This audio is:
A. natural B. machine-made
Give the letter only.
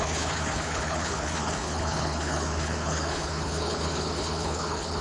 B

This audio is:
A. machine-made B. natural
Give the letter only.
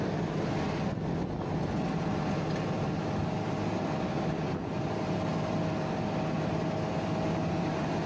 B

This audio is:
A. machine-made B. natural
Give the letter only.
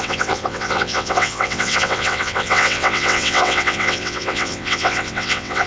A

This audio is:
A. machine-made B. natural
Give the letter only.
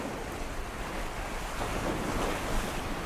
B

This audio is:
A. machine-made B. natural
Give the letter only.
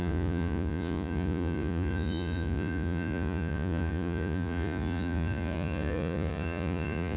A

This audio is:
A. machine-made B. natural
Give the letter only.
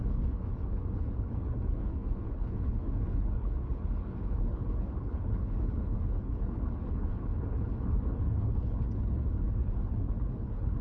A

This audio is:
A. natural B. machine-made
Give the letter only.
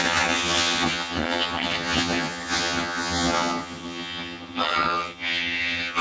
B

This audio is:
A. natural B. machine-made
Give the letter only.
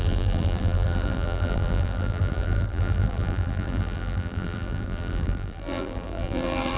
B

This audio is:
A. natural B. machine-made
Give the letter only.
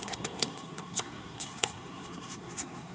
B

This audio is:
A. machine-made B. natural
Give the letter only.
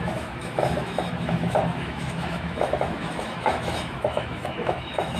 A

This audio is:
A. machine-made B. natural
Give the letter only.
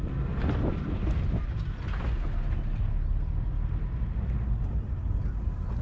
B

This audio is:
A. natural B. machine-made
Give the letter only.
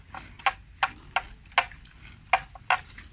A